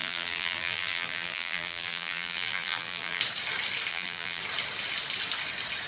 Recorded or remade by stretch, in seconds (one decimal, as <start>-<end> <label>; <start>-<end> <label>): 0.0-3.2 remade; 3.2-3.9 recorded; 3.9-4.4 remade; 4.4-5.9 recorded